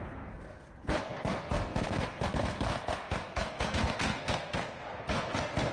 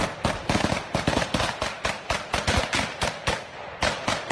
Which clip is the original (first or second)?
second